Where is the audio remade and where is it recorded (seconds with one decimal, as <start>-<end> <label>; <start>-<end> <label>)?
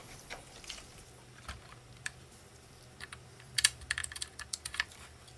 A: 0.0-5.4 remade